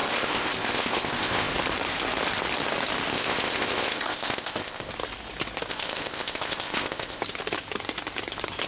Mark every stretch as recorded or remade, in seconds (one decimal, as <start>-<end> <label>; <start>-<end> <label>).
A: 0.0-1.5 remade; 1.5-3.1 recorded; 3.1-4.9 remade; 4.9-5.7 recorded; 5.7-7.2 remade; 7.2-8.7 recorded